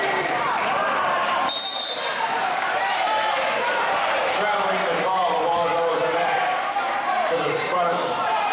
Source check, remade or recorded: remade